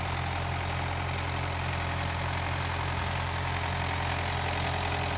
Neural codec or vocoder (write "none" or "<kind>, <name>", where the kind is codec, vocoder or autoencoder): none